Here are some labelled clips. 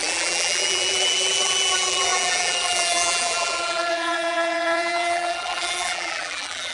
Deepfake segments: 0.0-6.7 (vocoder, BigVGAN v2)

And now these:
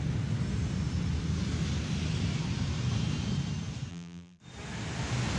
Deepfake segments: 3.9-4.4 (vocoder, BigVGAN v2)

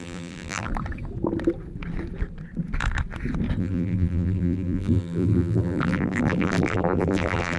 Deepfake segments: 0.0-0.7 (vocoder, BigVGAN v2); 3.6-7.6

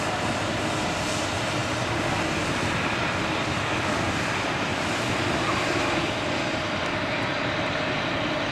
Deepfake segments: 1.6-2.1 (vocoder, BigVGAN v2); 4.7-5.8

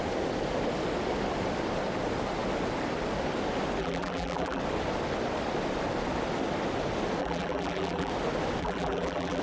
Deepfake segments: 3.8-4.6 (vocoder, BigVGAN v2); 7.2-8.1; 8.6-9.4